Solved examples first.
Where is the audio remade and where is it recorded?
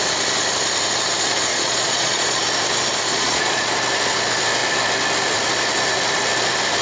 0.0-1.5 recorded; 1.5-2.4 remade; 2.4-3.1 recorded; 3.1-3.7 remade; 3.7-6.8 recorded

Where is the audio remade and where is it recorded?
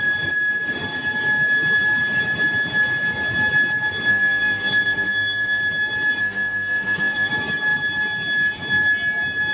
0.0-4.1 recorded; 4.1-5.6 remade; 5.6-6.2 recorded; 6.2-7.3 remade; 7.3-9.5 recorded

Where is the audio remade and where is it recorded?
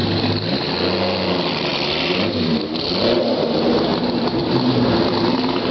0.0-0.7 remade; 0.7-3.9 recorded; 3.9-5.7 remade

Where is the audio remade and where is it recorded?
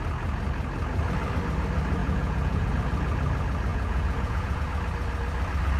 0.0-2.0 recorded; 2.0-2.7 remade; 2.7-3.7 recorded; 3.7-4.6 remade; 4.6-5.8 recorded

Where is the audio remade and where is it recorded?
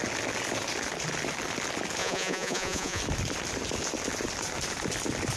0.0-2.0 recorded; 2.0-3.0 remade; 3.0-5.4 recorded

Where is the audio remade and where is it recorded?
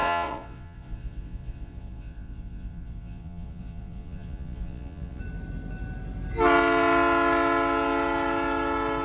0.0-5.2 remade; 5.2-9.0 recorded